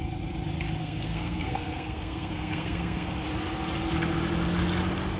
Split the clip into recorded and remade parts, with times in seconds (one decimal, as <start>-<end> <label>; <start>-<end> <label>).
0.0-0.8 recorded; 0.8-3.1 remade; 3.1-5.2 recorded